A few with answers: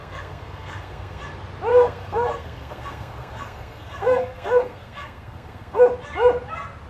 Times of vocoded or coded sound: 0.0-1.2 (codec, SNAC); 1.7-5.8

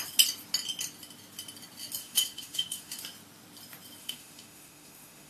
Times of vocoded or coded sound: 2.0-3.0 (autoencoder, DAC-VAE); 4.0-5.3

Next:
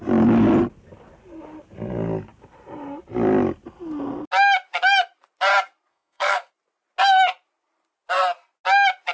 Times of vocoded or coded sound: 5.9-6.5 (codec, SNAC)

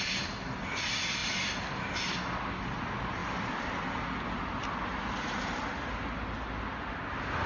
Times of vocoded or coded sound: none

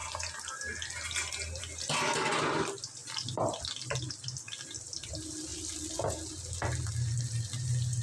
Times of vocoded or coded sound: none